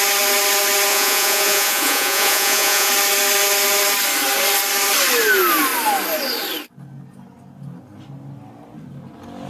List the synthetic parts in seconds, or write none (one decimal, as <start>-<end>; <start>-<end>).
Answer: 0.9-2.9